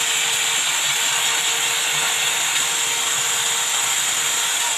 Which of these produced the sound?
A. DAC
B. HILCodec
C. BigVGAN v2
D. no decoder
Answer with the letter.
D